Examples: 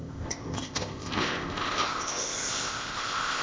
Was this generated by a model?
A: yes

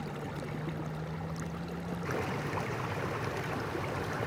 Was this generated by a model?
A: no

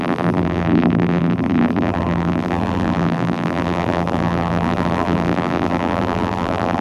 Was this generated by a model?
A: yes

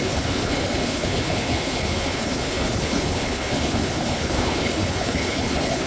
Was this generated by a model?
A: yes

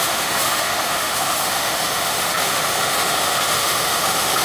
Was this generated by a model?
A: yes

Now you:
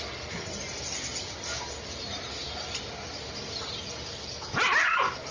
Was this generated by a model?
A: no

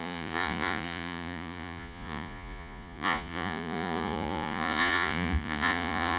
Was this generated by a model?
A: yes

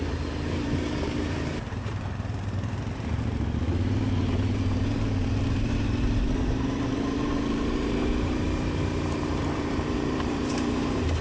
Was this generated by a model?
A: yes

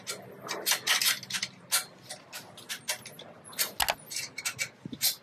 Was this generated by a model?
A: no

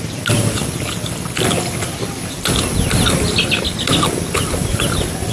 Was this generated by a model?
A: no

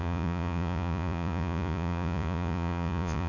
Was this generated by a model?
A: yes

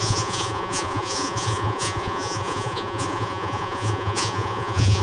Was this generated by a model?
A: yes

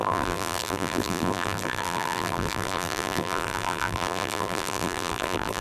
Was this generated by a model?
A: yes